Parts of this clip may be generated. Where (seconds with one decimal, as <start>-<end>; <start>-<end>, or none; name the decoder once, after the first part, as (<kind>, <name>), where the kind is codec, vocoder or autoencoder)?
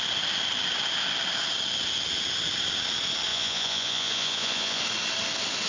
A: 3.3-4.8 (vocoder, Vocos)